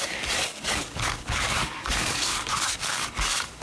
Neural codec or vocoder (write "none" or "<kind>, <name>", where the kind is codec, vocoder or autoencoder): codec, DAC